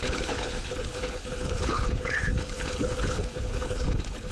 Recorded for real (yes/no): no